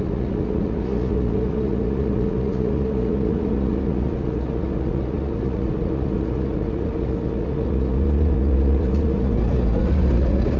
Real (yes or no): no